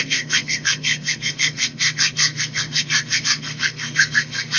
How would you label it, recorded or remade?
remade